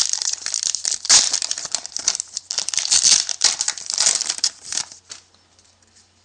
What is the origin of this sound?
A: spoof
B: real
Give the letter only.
B